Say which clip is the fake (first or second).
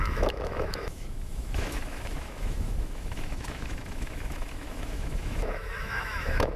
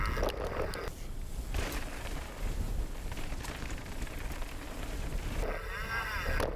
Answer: first